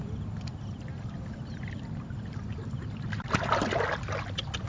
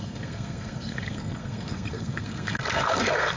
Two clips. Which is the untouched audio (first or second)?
first